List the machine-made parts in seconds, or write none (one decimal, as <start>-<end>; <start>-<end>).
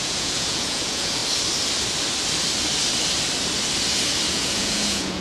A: 0.0-1.2; 4.3-5.2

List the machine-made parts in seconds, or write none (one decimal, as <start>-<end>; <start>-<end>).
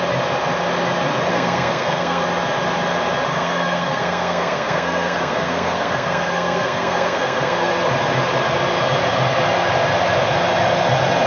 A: 1.3-2.2; 3.3-7.7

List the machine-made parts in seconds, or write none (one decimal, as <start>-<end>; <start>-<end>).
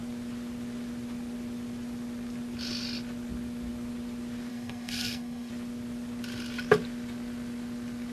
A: 4.5-5.5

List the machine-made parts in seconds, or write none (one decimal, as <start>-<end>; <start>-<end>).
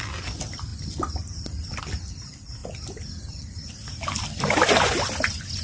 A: 0.7-1.8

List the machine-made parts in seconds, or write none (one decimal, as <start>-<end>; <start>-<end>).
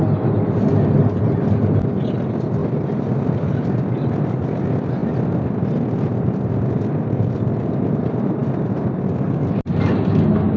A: none